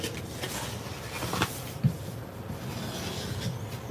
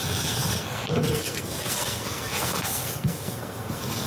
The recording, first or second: first